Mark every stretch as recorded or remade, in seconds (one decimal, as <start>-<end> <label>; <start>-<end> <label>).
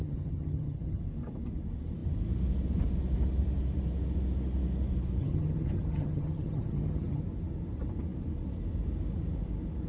0.0-1.0 remade; 1.0-5.2 recorded; 5.2-7.2 remade; 7.2-9.9 recorded